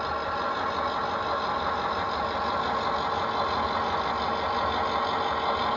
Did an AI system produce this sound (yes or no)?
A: no